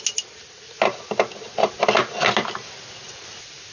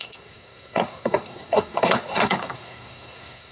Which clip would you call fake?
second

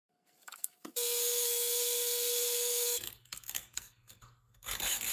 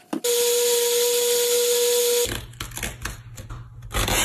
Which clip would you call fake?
first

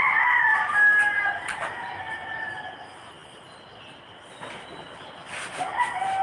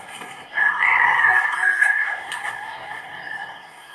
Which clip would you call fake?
second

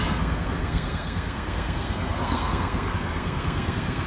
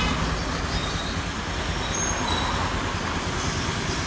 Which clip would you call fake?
first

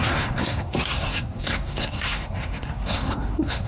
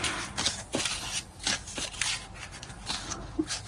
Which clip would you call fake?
first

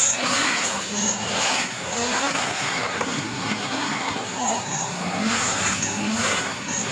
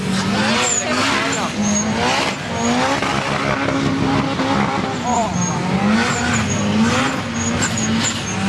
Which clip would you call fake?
first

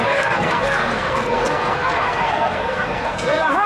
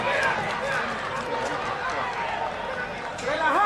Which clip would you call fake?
first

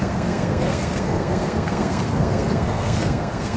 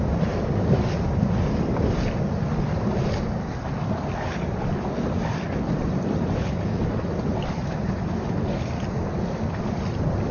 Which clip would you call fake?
first